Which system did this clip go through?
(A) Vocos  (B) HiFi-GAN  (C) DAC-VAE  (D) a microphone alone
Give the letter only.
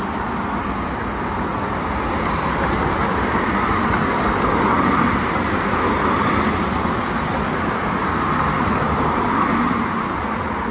D